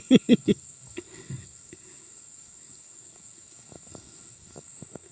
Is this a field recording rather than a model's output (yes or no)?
no